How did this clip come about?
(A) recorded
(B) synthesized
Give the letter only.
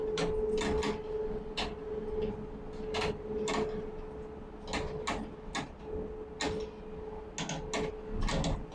A